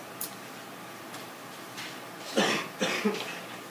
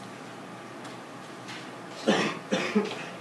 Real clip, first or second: second